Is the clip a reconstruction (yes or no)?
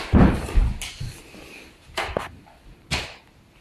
no